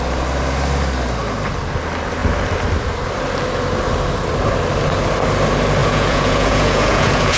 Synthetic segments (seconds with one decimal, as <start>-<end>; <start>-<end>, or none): 5.8-7.4